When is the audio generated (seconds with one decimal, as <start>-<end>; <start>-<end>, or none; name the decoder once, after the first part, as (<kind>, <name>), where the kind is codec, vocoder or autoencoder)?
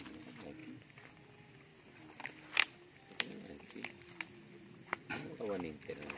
0.6-1.2 (vocoder, BigVGAN v2); 1.7-5.4